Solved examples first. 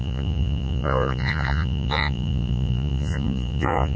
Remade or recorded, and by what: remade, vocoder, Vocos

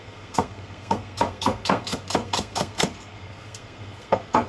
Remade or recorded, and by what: remade, codec, SNAC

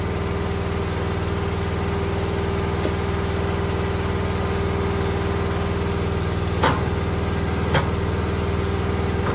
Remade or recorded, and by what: recorded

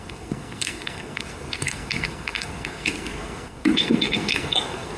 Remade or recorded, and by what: remade, codec, SNAC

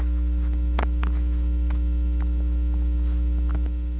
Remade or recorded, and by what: remade, autoencoder, DAC-VAE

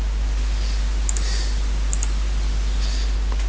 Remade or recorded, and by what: recorded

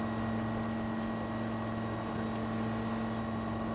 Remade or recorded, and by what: recorded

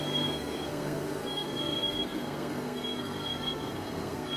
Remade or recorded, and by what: remade, codec, SNAC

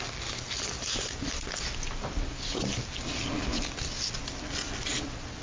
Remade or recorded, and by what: recorded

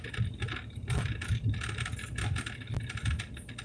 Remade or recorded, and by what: recorded